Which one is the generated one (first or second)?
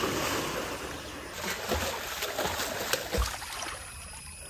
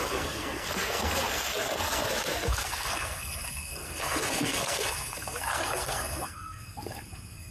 second